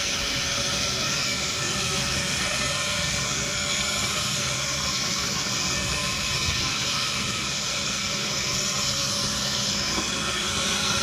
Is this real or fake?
fake